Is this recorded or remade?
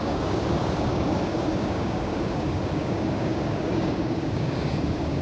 remade